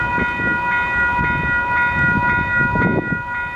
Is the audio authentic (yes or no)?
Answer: yes